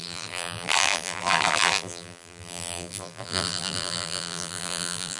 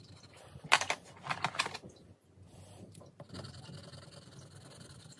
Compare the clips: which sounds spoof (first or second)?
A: first